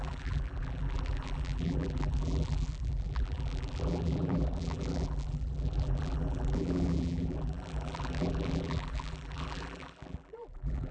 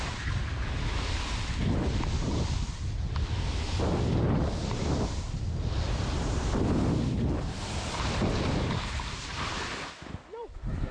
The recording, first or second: second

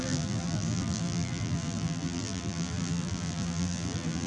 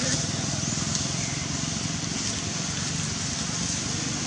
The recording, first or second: second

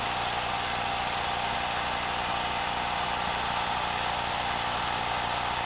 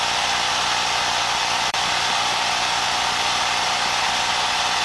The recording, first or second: first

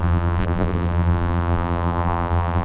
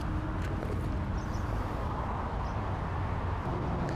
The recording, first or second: second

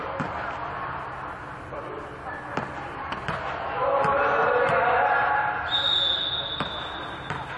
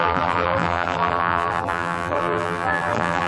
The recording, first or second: first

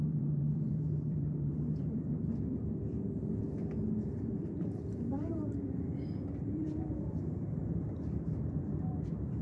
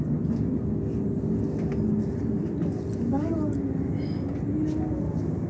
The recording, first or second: second